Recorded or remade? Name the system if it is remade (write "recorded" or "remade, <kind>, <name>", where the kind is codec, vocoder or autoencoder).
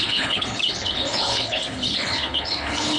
remade, codec, HILCodec